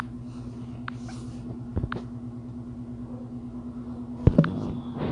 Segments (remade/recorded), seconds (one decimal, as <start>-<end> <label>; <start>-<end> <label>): 0.0-5.1 recorded